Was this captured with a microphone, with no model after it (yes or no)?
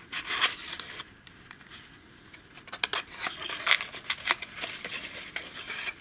yes